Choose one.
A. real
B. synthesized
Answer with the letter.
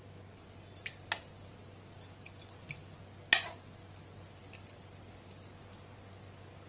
A